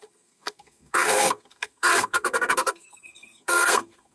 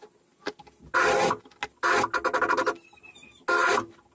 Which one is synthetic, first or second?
first